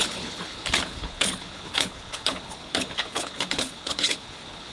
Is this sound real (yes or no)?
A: no